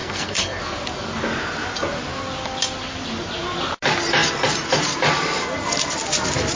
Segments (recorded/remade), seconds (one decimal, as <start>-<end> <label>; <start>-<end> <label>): 0.0-0.6 remade; 0.6-6.6 recorded